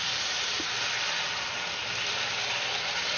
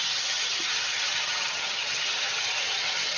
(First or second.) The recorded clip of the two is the first